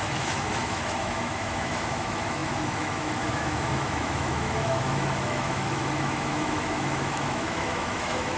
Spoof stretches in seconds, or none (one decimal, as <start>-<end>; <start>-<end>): 0.0-8.4